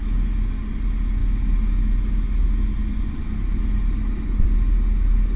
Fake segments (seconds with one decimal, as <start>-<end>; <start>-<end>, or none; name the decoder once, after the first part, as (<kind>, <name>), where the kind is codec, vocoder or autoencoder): none